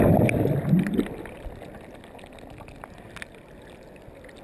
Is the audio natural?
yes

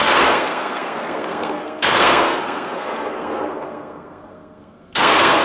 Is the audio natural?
no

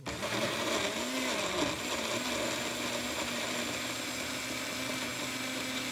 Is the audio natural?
yes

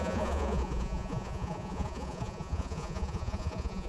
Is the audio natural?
no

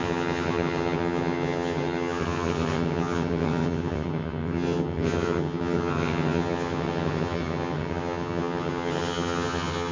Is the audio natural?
no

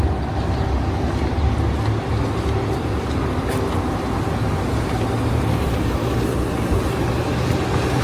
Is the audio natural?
yes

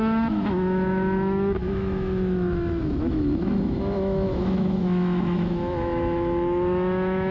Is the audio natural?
no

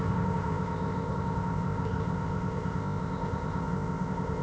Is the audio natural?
no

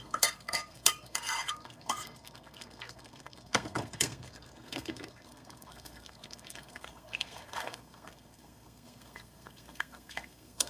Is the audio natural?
no